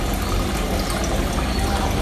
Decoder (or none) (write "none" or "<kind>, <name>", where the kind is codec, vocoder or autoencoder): none